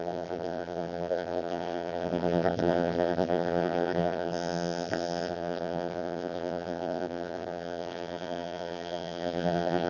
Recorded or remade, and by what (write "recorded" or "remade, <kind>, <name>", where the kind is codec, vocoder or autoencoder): remade, vocoder, BigVGAN v2